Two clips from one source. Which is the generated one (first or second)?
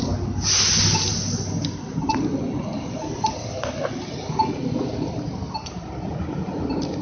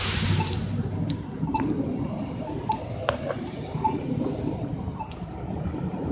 second